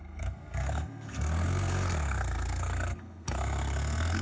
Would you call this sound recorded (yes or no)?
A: no